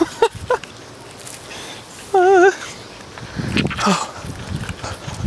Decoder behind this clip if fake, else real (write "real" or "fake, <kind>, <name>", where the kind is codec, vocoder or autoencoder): real